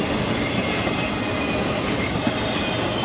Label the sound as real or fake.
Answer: real